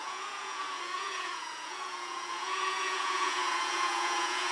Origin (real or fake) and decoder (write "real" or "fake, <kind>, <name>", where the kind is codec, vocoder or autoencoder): fake, vocoder, Vocos